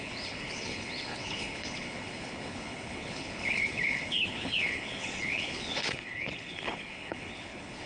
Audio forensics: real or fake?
fake